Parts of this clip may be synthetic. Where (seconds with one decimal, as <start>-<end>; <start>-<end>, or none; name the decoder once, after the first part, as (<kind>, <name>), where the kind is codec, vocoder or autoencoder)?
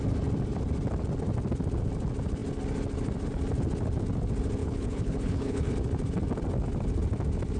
4.6-5.7 (codec, HILCodec)